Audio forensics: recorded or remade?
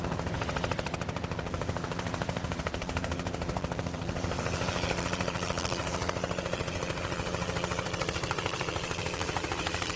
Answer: remade